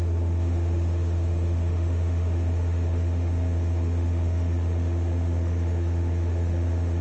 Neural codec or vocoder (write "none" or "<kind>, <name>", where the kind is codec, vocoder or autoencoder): autoencoder, DAC-VAE